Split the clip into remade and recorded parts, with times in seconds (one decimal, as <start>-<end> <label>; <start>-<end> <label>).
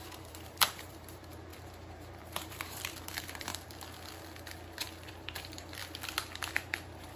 0.0-3.5 remade; 3.5-5.1 recorded; 5.1-5.8 remade; 5.8-6.5 recorded; 6.5-7.2 remade